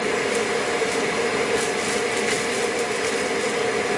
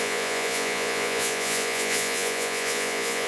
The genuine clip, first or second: first